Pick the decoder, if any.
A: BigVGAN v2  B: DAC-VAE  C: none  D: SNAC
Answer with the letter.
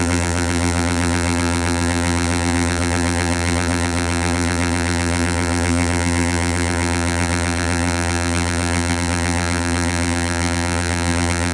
A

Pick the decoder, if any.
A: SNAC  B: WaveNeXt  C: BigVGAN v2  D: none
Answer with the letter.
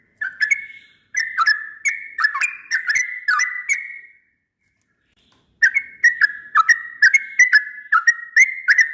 D